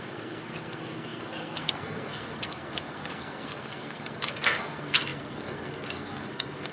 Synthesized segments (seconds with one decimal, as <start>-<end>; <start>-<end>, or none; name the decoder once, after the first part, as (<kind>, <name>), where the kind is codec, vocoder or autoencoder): 0.0-6.7 (codec, SNAC)